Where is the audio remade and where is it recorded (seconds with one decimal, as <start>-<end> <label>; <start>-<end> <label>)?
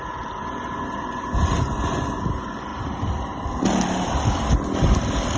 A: 0.0-5.4 recorded